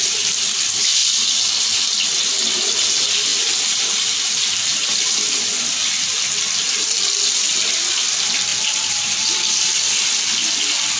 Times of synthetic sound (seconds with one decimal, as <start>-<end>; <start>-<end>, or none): 3.3-4.9; 8.5-9.3

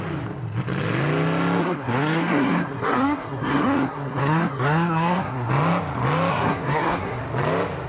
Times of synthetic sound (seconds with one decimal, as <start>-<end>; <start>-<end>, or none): 1.6-5.5; 6.3-7.2